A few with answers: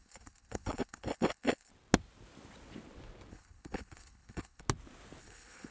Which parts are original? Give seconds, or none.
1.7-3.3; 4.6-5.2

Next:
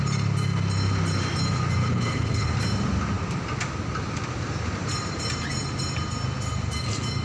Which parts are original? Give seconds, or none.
0.0-1.8; 2.5-7.2

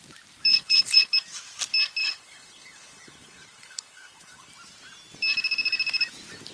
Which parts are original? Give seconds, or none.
0.0-0.5; 1.1-2.0; 4.5-6.5

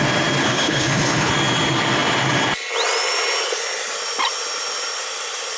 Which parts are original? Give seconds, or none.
0.0-0.4; 1.3-5.6

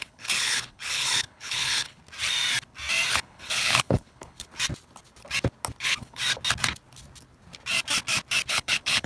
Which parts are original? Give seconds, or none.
2.0-3.1; 4.5-5.8; 6.2-8.5

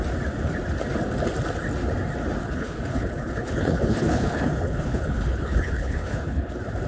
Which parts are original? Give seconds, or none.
0.0-2.4; 6.5-6.9